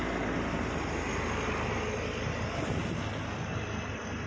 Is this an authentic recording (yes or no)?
yes